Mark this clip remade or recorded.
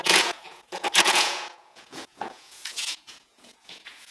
remade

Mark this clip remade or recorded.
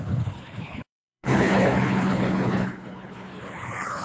remade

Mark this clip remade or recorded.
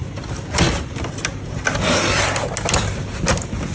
recorded